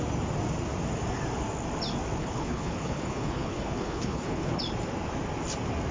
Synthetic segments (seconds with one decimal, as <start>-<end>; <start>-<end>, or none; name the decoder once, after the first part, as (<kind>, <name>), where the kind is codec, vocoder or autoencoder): 2.2-4.6 (codec, HILCodec)